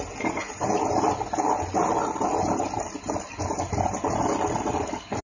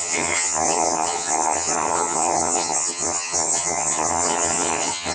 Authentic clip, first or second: first